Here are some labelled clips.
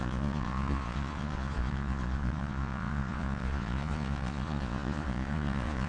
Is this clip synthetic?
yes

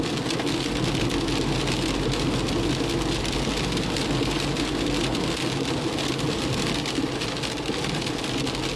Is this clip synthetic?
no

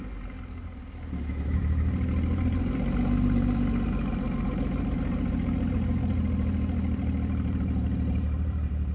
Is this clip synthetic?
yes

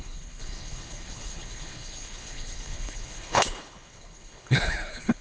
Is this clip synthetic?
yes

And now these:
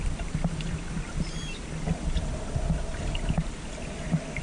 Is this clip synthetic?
no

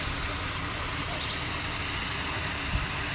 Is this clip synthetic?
no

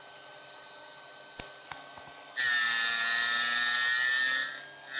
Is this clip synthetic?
no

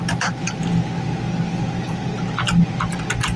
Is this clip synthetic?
no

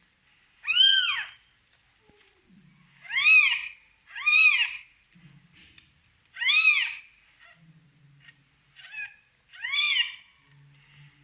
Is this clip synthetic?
no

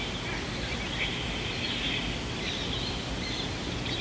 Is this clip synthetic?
no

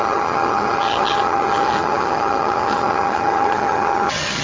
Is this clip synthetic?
yes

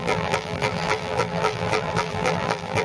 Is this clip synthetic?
yes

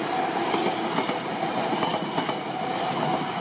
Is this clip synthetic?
no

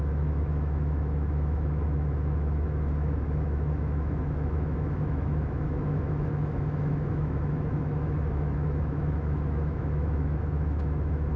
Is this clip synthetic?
yes